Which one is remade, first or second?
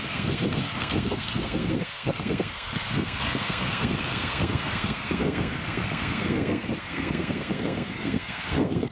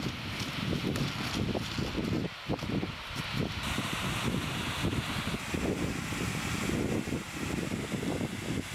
first